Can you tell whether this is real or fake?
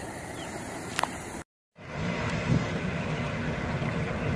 fake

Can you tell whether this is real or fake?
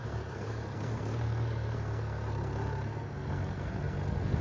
fake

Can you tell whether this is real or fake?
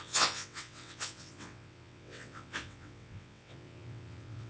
fake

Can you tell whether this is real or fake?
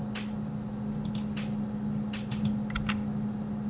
real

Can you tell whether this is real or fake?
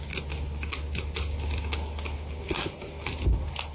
real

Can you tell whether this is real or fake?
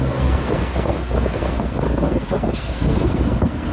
fake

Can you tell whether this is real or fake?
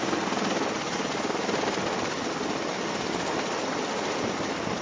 real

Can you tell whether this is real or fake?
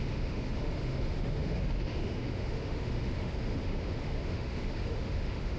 fake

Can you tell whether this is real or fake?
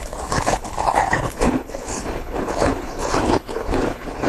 fake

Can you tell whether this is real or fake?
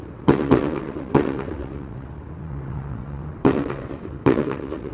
fake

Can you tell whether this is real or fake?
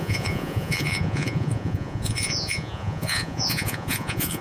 fake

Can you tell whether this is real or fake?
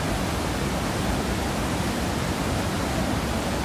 real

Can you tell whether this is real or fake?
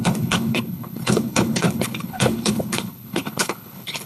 fake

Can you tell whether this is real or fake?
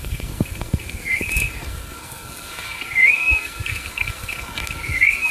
fake